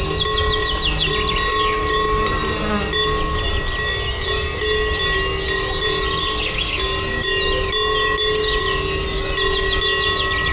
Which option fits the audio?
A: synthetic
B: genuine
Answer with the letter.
B